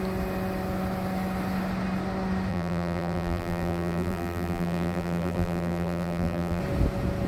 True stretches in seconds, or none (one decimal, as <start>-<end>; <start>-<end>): 0.0-2.5; 6.6-7.3